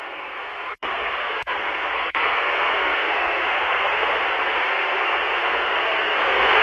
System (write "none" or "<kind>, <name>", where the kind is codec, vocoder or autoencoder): codec, SNAC